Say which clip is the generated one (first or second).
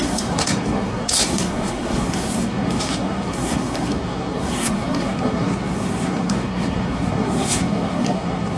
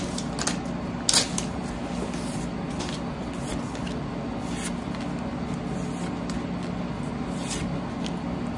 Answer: first